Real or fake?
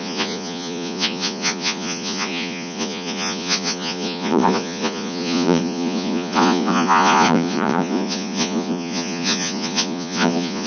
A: fake